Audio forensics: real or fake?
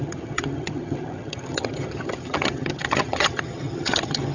fake